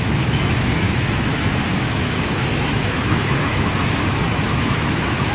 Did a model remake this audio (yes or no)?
yes